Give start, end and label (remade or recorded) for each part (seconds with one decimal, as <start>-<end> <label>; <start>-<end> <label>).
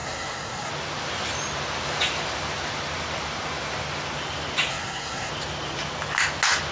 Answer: 0.0-0.7 remade; 0.7-4.7 recorded; 4.7-5.3 remade; 5.3-6.7 recorded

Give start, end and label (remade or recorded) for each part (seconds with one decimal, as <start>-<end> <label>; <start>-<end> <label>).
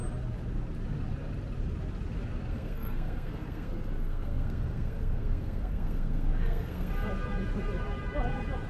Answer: 0.0-2.5 recorded; 2.5-6.9 remade; 6.9-8.7 recorded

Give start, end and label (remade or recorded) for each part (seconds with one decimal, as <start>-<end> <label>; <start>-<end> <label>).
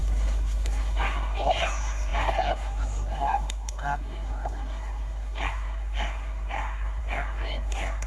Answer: 0.0-8.1 remade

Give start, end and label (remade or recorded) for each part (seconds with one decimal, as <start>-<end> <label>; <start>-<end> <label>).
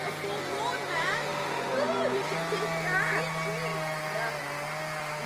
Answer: 0.0-5.3 recorded